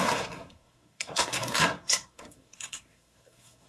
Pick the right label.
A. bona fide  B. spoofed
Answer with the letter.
B